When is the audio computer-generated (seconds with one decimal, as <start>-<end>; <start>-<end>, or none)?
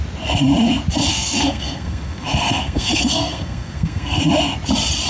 1.1-4.2